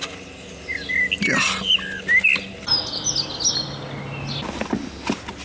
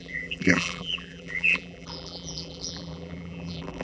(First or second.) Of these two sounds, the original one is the first